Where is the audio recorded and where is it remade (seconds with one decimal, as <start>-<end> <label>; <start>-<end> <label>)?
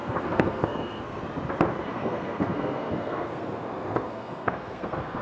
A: 0.0-1.2 remade; 1.2-1.9 recorded; 1.9-5.2 remade